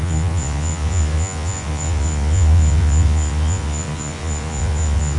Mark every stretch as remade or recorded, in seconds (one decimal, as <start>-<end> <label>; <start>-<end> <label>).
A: 0.0-5.2 remade